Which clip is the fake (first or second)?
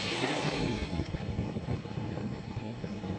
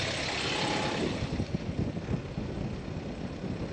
first